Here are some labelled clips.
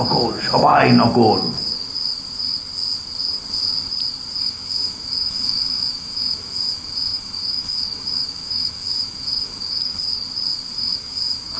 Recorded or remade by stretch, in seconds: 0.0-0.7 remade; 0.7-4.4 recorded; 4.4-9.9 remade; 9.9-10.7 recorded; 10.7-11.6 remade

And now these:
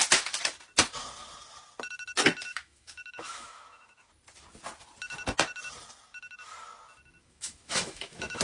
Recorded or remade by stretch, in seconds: 0.0-2.5 recorded; 2.5-4.1 remade; 4.1-7.2 recorded; 7.2-8.4 remade

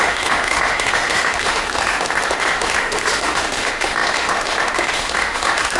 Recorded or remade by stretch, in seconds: 0.0-5.8 remade

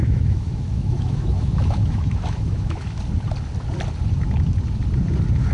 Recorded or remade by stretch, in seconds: 0.0-3.0 remade; 3.0-5.5 recorded

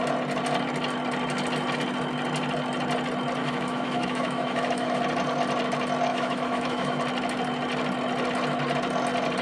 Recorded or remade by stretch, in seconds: 0.0-3.4 recorded; 3.4-5.0 remade; 5.0-6.1 recorded; 6.1-7.0 remade; 7.0-9.4 recorded

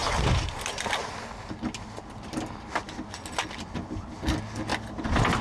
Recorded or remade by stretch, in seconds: 0.0-5.4 recorded